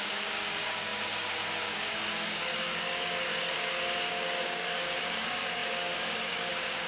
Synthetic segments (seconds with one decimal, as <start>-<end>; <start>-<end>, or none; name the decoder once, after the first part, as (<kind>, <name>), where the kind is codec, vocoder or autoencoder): 0.0-6.9 (codec, DAC)